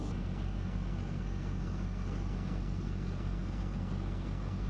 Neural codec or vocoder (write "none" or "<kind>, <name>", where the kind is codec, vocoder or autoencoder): codec, SNAC